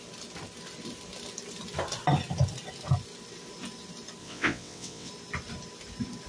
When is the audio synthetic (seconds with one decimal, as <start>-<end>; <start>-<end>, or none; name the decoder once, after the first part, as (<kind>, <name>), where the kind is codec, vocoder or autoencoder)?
4.2-5.1 (vocoder, WaveNeXt)